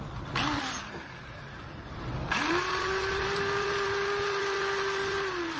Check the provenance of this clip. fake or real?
real